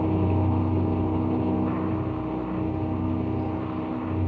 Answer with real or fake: real